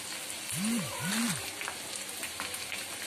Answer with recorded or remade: recorded